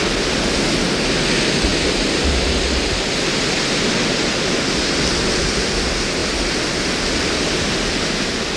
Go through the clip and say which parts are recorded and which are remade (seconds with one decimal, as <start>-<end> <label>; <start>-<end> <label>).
0.0-8.6 recorded